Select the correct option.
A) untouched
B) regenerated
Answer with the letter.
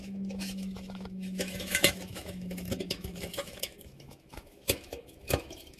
B